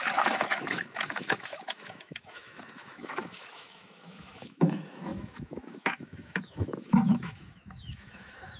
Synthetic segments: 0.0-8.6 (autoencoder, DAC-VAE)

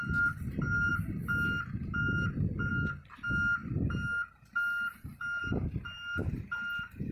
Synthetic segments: none

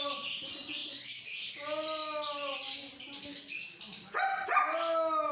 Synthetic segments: none

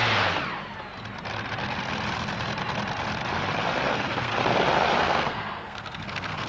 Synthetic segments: 3.9-4.3 (codec, SNAC); 5.0-6.5

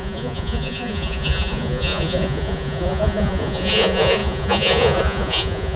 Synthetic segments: 0.0-5.8 (vocoder, Vocos)